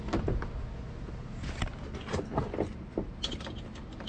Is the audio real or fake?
real